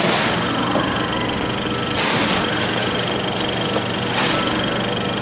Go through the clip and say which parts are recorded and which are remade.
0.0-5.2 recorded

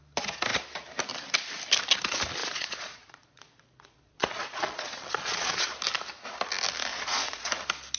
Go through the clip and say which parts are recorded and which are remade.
0.0-2.4 recorded; 2.4-5.7 remade; 5.7-6.9 recorded; 6.9-7.5 remade; 7.5-8.0 recorded

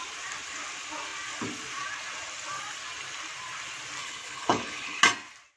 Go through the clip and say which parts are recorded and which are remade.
0.0-4.0 recorded; 4.0-5.0 remade; 5.0-5.6 recorded

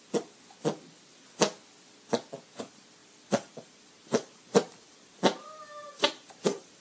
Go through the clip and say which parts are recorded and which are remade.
0.0-3.0 recorded; 3.0-6.8 remade